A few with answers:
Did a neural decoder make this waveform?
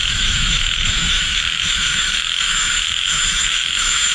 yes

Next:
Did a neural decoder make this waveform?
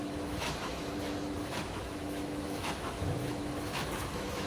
yes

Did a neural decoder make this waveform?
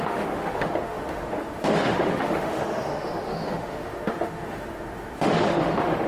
yes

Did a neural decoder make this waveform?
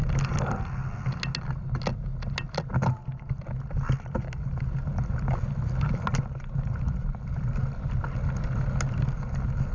no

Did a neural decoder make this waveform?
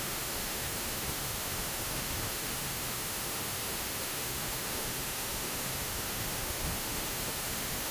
yes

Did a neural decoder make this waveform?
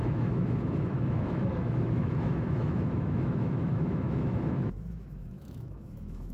yes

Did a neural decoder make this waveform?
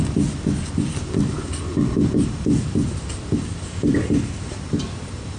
no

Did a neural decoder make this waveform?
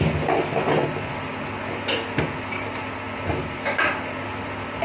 no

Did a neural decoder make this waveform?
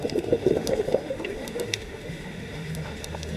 yes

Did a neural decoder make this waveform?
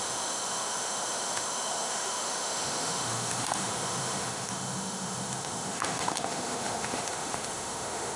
yes